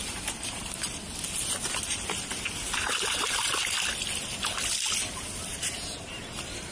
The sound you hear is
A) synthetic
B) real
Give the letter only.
B